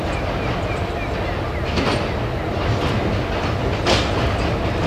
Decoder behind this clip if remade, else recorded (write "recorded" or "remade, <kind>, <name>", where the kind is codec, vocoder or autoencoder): recorded